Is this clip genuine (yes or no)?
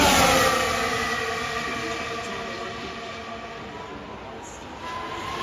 yes